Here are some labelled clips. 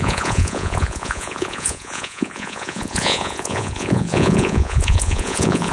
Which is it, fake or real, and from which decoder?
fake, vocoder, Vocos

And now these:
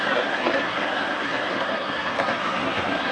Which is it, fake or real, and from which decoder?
fake, codec, SNAC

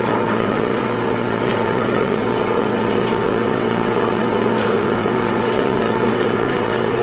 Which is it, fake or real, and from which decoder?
fake, vocoder, WaveNeXt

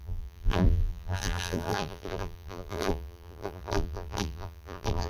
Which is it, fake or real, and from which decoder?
fake, vocoder, BigVGAN v2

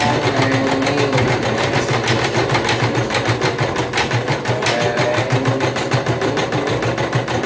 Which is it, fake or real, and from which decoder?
real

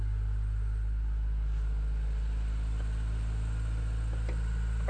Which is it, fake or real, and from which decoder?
real